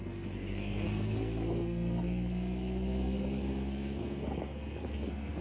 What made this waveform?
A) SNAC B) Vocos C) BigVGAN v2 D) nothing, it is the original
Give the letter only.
A